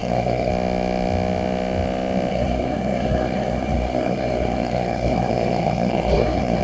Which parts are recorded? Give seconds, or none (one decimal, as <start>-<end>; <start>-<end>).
0.5-2.3